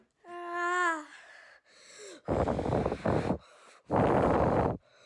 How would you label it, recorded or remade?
recorded